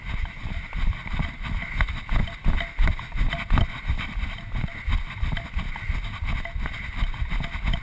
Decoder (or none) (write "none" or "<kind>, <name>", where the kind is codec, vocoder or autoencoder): none